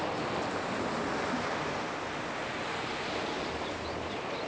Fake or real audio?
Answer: real